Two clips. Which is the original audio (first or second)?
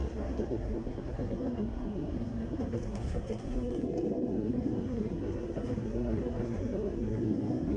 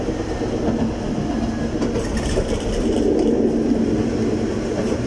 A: second